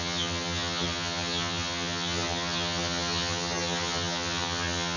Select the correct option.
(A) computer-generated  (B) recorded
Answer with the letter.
A